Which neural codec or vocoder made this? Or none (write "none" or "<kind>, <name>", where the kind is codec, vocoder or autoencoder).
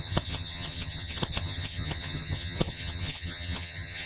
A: vocoder, HiFi-GAN